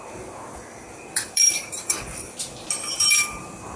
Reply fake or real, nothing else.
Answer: fake